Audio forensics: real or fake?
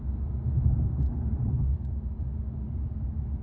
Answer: real